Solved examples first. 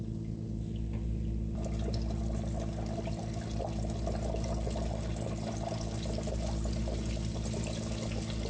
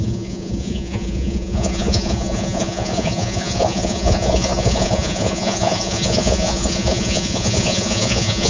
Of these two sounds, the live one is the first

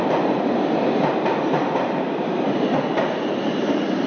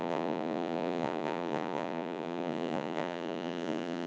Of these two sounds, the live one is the first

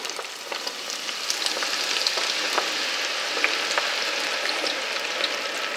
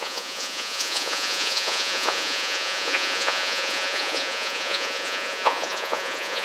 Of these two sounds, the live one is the first